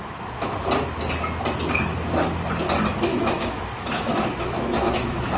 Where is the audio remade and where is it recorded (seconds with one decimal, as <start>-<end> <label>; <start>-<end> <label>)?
0.0-3.1 recorded; 3.1-5.4 remade